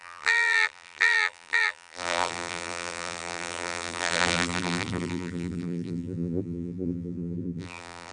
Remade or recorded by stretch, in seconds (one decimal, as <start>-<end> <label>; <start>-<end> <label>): 0.0-8.1 remade